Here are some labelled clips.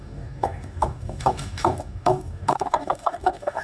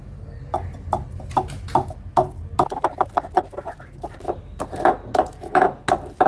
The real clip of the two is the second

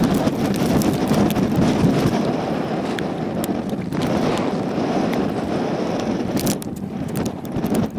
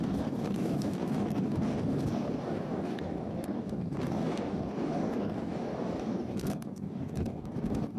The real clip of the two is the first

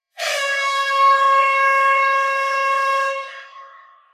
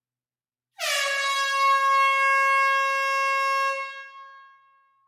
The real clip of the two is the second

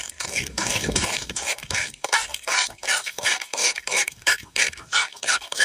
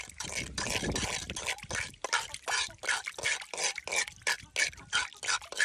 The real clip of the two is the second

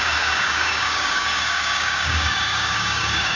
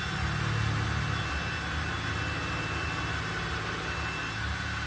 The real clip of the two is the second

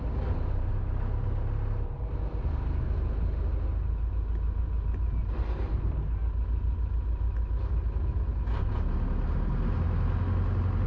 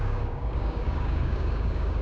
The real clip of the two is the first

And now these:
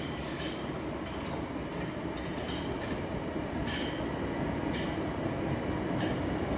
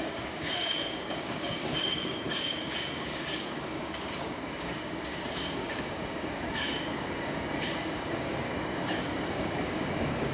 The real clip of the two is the first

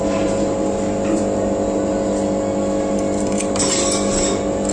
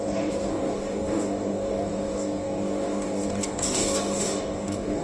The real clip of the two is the first